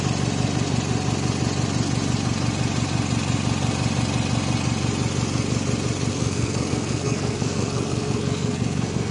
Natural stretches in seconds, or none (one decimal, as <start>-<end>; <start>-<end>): 0.0-6.1